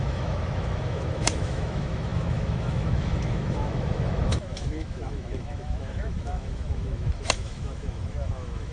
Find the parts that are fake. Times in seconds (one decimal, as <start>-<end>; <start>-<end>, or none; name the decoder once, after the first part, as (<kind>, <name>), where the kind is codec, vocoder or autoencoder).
0.0-8.7 (autoencoder, DAC-VAE)